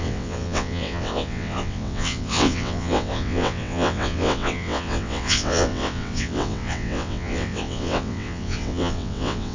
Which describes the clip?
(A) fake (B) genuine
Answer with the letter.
A